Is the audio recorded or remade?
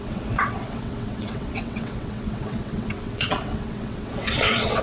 remade